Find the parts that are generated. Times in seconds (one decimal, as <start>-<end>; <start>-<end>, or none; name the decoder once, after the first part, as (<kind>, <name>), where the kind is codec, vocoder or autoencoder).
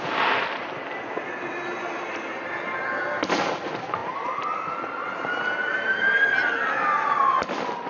none